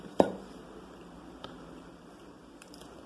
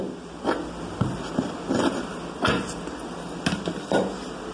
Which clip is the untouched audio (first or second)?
second